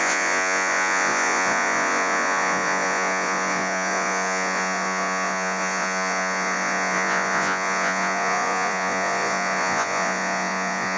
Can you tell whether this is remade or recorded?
remade